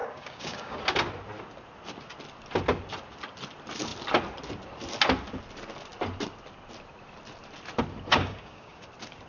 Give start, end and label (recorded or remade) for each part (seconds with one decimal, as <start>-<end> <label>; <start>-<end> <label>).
0.0-0.8 remade; 0.8-8.1 recorded; 8.1-8.8 remade; 8.8-9.3 recorded